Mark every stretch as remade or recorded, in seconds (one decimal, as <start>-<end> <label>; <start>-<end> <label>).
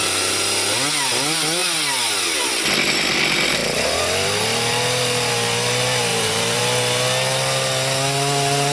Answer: 0.0-6.1 recorded; 6.1-6.6 remade; 6.6-8.7 recorded